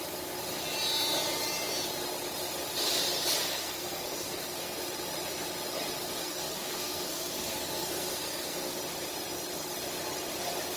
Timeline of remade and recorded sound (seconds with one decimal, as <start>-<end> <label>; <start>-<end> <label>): 0.0-3.4 recorded; 3.4-4.8 remade; 4.8-6.2 recorded; 6.2-8.8 remade; 8.8-10.8 recorded